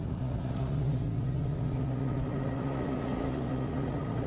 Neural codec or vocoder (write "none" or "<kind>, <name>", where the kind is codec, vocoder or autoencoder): vocoder, Vocos